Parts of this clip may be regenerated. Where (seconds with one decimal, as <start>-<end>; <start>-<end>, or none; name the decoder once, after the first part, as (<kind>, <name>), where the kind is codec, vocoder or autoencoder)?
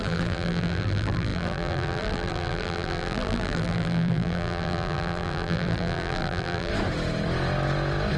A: 0.0-6.7 (vocoder, BigVGAN v2)